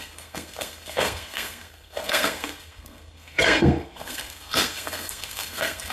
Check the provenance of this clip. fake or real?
fake